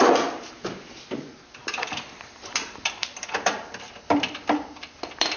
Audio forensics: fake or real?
fake